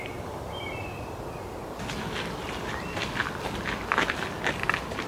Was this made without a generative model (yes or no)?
yes